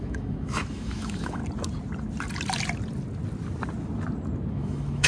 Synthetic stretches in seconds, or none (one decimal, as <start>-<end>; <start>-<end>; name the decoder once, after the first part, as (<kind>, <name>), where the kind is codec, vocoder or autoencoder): 0.0-1.4 (autoencoder, DAC-VAE); 4.5-5.1